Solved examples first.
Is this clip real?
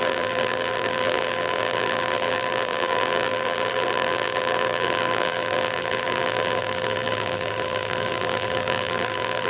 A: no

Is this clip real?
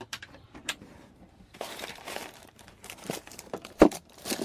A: no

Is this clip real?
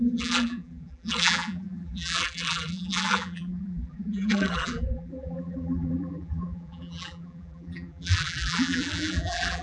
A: no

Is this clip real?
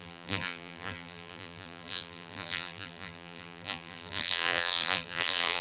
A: no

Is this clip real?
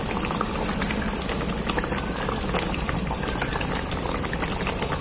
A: no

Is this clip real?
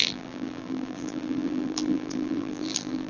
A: no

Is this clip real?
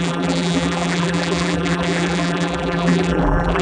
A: no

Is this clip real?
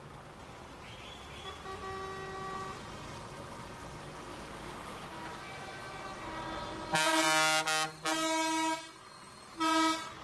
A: yes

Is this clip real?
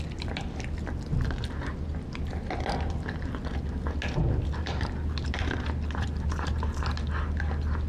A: yes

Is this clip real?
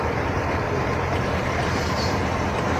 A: no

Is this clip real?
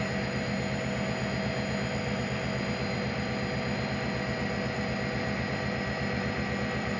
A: yes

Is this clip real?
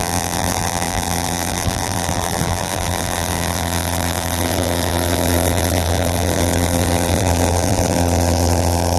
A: no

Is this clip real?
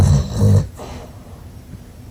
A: no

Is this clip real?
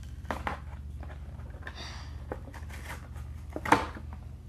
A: yes